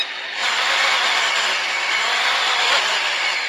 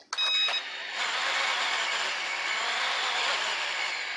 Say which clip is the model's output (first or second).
first